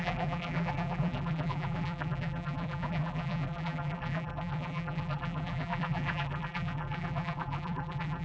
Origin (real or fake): fake